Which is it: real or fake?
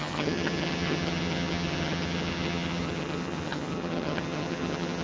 fake